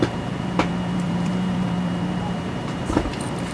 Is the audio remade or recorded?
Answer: remade